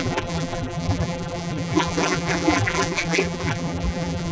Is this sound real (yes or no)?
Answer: no